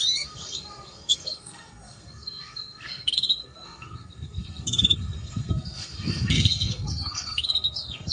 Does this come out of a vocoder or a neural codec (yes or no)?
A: yes